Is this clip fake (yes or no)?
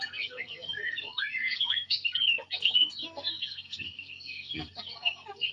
yes